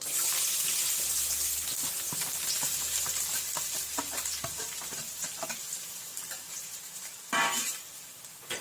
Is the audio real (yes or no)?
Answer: no